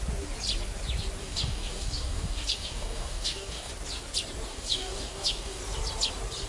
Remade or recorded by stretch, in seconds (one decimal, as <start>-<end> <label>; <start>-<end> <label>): 0.0-1.2 recorded; 1.2-3.7 remade; 3.7-4.5 recorded; 4.5-5.6 remade; 5.6-6.5 recorded